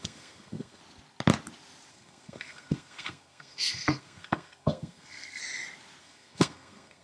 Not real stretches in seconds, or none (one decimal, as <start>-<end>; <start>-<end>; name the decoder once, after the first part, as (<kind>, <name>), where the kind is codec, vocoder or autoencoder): 0.0-0.8 (codec, SNAC); 1.9-5.4; 6.0-7.0